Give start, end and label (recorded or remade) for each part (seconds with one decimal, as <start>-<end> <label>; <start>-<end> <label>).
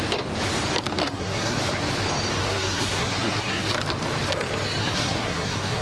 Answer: 0.0-1.0 recorded; 1.0-1.6 remade; 1.6-2.4 recorded; 2.4-3.7 remade; 3.7-4.8 recorded; 4.8-5.8 remade